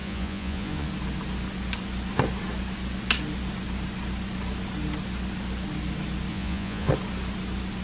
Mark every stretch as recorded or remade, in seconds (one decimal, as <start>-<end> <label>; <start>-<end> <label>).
0.0-0.9 remade; 0.9-6.3 recorded; 6.3-6.9 remade; 6.9-7.8 recorded

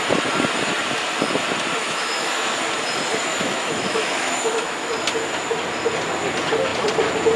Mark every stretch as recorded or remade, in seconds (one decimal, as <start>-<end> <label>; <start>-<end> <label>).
0.0-1.8 recorded; 1.8-2.5 remade; 2.5-3.3 recorded; 3.3-4.9 remade; 4.9-7.4 recorded